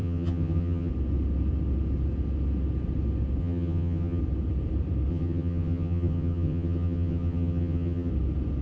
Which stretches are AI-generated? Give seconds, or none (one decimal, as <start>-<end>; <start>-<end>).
0.0-0.9; 3.4-4.2; 5.1-8.1